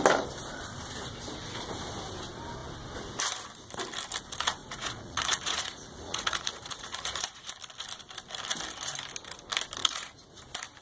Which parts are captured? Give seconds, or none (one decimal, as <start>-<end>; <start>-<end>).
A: 0.0-4.6; 7.5-9.8; 10.4-10.8